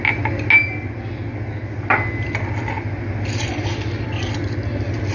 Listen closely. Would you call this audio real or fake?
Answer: real